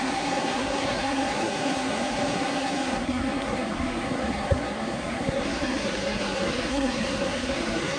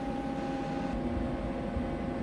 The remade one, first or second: first